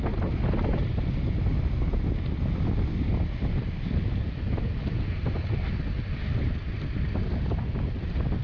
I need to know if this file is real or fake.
real